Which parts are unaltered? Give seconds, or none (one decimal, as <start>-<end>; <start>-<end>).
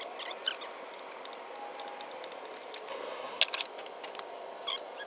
0.0-2.9; 3.4-5.1